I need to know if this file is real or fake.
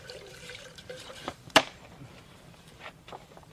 fake